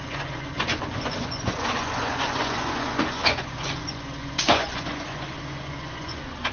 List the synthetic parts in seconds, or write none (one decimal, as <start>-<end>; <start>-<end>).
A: 0.0-6.5